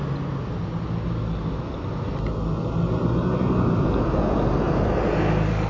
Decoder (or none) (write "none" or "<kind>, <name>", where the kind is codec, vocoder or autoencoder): none